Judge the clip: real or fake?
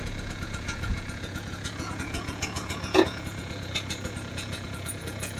fake